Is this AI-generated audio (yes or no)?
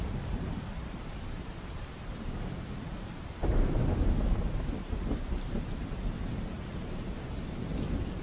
yes